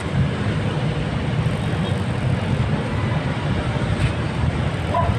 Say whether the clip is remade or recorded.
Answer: recorded